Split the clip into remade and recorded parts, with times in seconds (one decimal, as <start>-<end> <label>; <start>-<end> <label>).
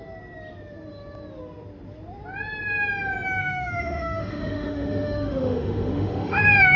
0.0-3.4 recorded; 3.4-6.8 remade